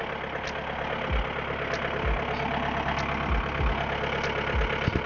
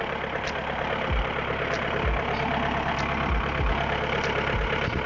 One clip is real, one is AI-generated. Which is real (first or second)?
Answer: first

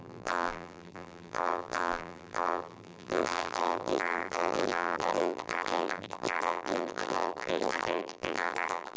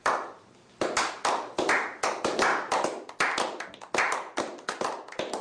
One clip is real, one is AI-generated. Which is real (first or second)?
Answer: second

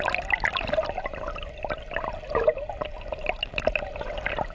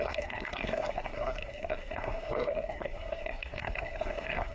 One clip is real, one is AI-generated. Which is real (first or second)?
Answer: first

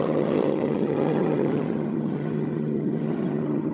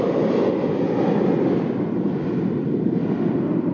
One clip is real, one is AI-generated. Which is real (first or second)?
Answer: second